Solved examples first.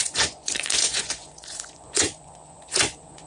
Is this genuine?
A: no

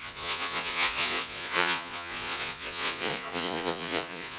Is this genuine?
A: no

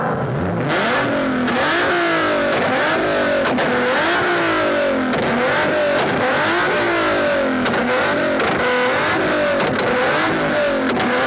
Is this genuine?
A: yes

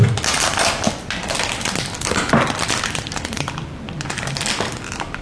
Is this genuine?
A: yes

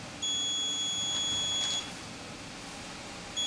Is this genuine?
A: yes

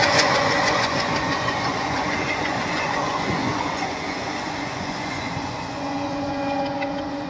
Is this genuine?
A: no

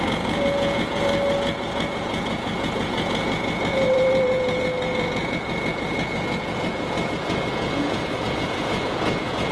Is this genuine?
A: no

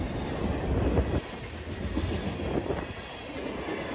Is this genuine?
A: yes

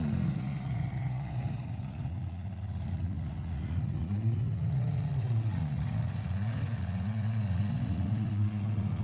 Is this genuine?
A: no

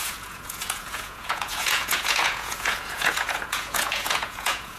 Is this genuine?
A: no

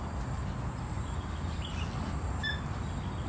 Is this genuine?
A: yes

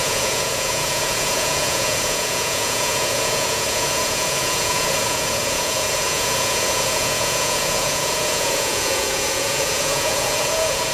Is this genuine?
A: no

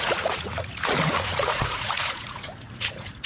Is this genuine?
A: no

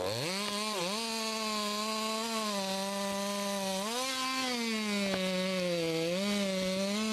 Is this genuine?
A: yes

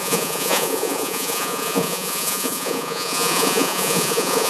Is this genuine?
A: no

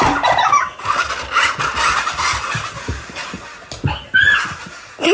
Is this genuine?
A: yes